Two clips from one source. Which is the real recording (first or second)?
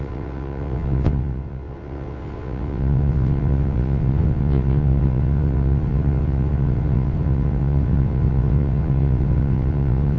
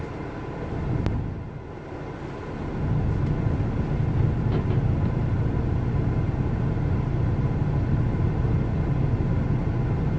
second